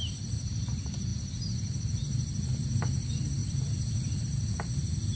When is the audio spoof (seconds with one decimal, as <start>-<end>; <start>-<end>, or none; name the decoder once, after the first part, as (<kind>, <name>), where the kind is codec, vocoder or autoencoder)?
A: 3.4-4.2 (vocoder, BigVGAN v2)